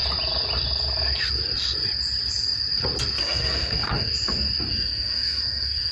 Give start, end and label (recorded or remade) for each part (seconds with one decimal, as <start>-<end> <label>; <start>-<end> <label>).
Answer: 0.0-3.2 recorded; 3.2-4.1 remade; 4.1-4.7 recorded; 4.7-5.9 remade